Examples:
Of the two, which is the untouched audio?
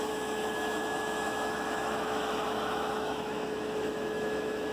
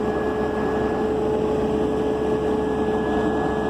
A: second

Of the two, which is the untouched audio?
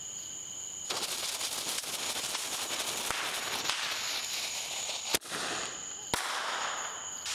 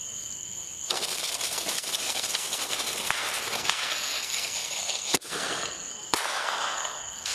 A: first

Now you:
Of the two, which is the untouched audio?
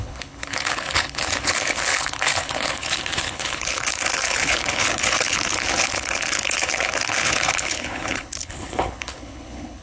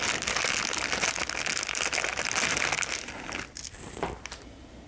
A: second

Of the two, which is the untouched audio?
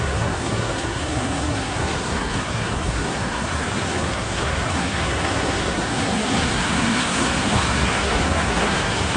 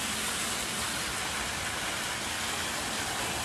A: second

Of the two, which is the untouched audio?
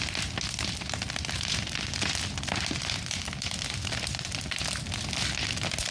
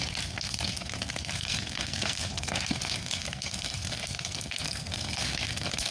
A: first